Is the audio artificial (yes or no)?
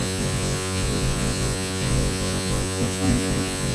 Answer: yes